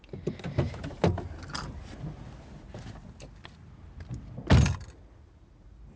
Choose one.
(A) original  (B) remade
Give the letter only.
A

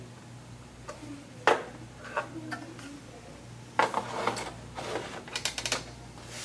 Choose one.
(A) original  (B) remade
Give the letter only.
A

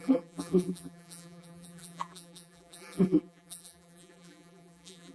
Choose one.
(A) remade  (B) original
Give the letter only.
A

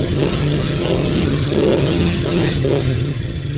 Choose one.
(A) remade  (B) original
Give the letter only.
A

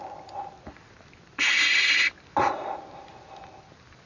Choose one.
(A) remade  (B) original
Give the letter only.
B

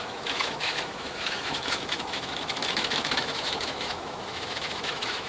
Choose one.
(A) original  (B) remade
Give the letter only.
B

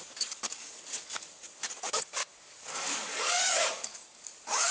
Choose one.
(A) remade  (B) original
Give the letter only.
A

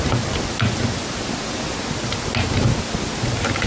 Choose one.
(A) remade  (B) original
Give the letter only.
B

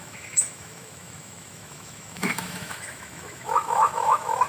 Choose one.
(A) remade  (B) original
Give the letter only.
A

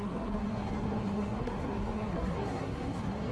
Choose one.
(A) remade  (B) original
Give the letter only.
A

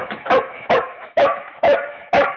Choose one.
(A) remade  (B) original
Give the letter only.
A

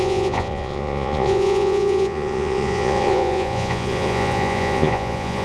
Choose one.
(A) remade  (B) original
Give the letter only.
A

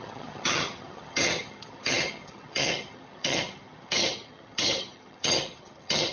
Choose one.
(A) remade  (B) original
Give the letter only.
A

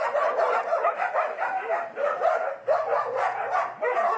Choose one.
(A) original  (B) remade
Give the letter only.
A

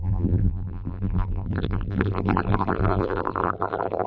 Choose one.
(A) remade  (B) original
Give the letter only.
A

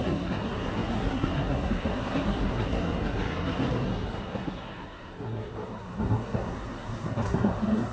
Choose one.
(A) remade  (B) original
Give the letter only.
A